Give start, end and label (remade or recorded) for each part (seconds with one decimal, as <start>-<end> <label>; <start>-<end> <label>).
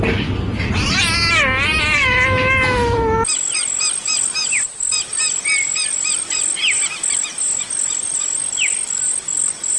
0.0-9.8 recorded